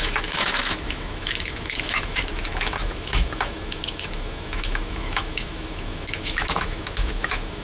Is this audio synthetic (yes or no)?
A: yes